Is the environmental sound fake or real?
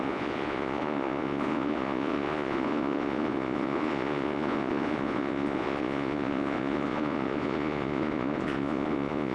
fake